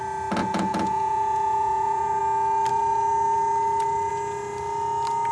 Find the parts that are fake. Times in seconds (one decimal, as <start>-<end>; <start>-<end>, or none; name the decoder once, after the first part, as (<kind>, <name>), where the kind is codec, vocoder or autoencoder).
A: 0.4-2.2 (vocoder, Vocos); 2.7-4.1